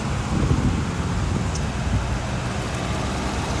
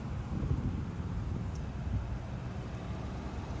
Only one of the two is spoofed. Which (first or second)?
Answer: second